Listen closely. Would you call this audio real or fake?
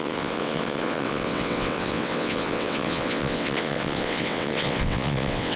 fake